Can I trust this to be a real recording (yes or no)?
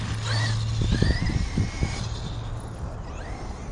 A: yes